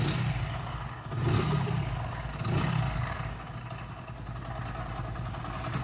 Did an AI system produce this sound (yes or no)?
no